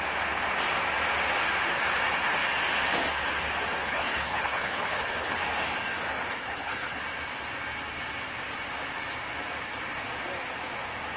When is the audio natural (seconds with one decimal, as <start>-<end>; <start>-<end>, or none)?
0.0-3.8; 5.4-6.3; 7.0-11.2